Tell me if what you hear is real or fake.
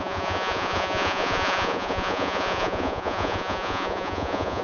fake